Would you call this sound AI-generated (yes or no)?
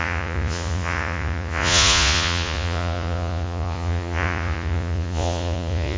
yes